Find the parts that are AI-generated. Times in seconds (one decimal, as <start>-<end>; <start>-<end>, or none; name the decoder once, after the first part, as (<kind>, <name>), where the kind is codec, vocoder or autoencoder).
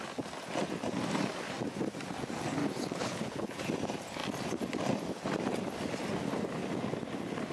2.6-3.6 (codec, HILCodec)